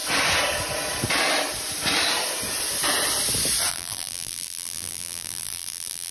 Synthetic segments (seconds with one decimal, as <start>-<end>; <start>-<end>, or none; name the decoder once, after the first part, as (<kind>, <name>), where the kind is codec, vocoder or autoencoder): 3.7-6.1 (vocoder, BigVGAN v2)